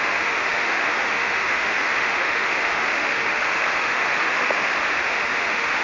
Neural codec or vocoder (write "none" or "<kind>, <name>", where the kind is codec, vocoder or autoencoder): autoencoder, DAC-VAE